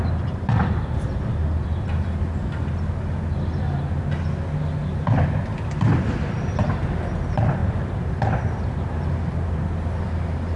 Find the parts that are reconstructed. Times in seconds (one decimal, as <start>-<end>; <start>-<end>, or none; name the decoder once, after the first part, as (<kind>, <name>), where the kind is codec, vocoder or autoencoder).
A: none